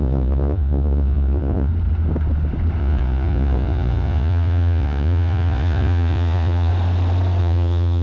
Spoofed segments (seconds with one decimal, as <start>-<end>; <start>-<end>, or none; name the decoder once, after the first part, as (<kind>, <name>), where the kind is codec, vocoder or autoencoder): 0.0-1.7 (vocoder, Vocos); 2.8-6.7; 7.4-8.0